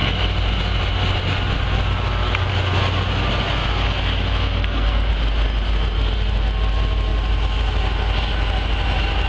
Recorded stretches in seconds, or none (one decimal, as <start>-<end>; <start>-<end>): 0.0-4.6; 5.1-9.3

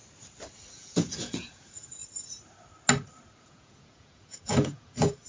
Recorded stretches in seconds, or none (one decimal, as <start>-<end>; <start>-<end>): 0.0-0.7; 2.0-3.4

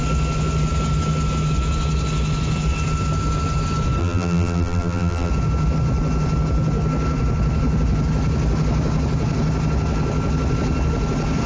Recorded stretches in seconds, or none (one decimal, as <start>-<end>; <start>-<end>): 0.0-4.0; 5.3-11.5